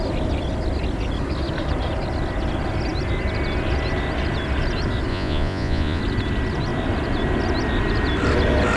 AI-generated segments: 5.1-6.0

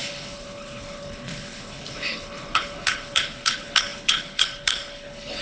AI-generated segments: 0.0-5.4